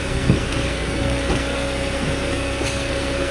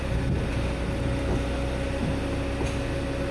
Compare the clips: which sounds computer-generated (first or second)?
first